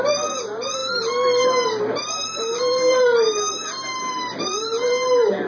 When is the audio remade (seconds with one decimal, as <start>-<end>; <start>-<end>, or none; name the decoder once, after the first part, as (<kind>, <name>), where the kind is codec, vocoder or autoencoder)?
none